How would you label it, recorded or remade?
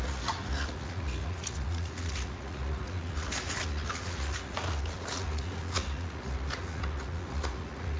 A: remade